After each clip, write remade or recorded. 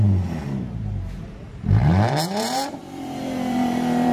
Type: remade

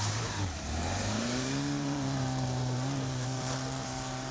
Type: remade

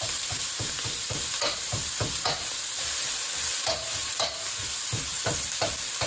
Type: recorded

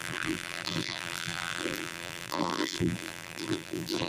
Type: remade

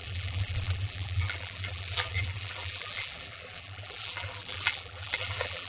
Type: remade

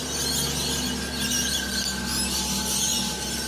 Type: recorded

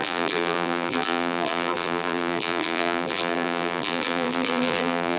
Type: remade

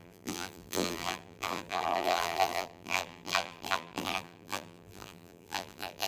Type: remade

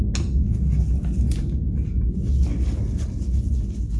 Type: recorded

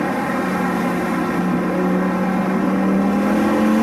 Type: recorded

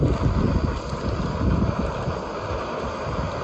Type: recorded